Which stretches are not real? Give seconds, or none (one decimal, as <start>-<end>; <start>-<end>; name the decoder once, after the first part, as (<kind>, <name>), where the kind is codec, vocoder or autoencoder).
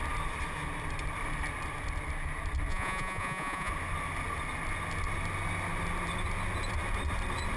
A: 2.7-3.7 (vocoder, Vocos)